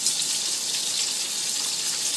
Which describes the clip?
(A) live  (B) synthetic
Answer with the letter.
A